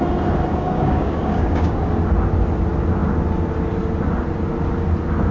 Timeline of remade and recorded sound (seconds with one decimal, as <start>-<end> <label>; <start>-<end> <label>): 0.0-0.5 recorded; 0.5-1.8 remade; 1.8-5.3 recorded